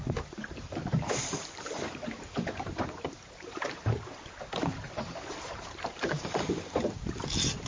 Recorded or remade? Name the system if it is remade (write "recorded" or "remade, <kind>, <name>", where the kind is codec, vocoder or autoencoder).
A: remade, vocoder, BigVGAN v2